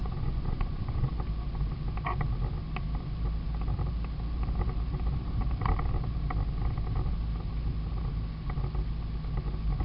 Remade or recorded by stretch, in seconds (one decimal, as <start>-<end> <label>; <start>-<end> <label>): 0.0-1.1 remade; 1.1-9.8 recorded